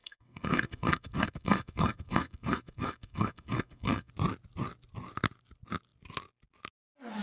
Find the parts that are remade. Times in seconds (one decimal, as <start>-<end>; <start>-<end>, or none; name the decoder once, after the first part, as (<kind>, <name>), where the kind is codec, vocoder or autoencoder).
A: 0.0-4.1 (codec, SNAC)